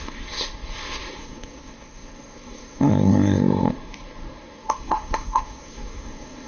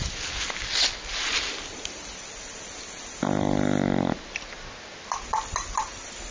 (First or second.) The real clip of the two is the second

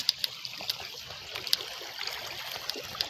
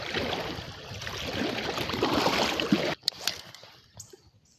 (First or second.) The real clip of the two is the first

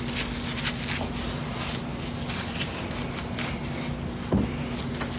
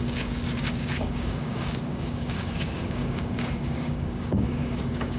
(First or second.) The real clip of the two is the first